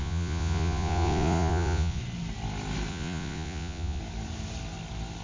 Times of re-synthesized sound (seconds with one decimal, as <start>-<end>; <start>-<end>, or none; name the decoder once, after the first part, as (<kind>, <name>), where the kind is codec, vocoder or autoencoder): 0.0-2.0 (vocoder, Vocos); 2.9-4.0